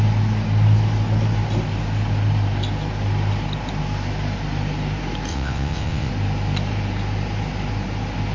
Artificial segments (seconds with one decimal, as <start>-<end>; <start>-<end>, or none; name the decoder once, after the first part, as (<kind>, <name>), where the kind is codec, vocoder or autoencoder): 5.3-6.1 (vocoder, WaveNeXt)